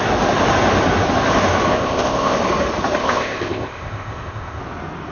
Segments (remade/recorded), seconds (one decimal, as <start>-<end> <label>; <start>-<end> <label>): 0.0-1.7 recorded; 1.7-2.4 remade; 2.4-3.0 recorded; 3.0-4.6 remade; 4.6-5.1 recorded